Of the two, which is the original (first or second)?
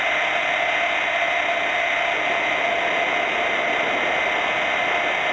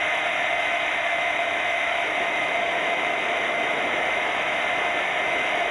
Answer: first